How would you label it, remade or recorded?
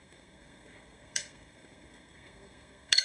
remade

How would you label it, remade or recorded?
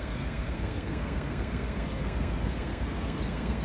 remade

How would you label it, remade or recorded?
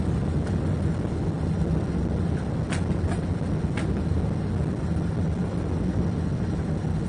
recorded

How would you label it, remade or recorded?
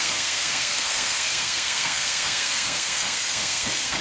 remade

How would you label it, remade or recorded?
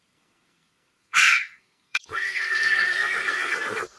remade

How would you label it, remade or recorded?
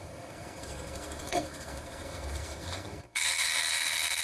remade